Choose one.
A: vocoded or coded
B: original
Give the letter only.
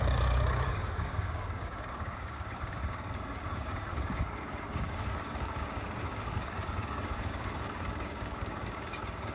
A